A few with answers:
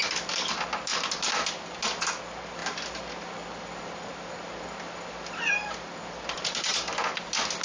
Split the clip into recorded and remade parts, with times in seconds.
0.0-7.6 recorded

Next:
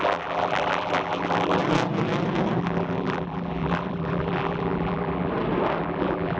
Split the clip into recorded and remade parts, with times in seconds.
0.0-1.6 remade; 1.6-2.6 recorded; 2.6-5.3 remade; 5.3-5.8 recorded; 5.8-6.4 remade

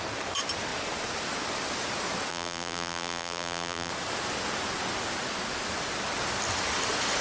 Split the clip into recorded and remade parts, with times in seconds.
0.0-2.3 recorded; 2.3-3.9 remade; 3.9-7.2 recorded

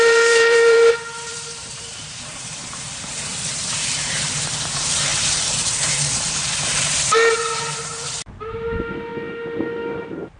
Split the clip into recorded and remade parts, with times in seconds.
0.0-9.1 remade; 9.1-10.4 recorded

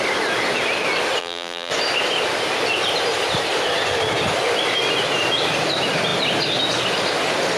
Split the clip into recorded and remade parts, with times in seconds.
0.0-1.2 recorded; 1.2-1.7 remade; 1.7-7.6 recorded